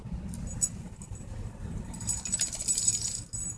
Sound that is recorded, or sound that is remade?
recorded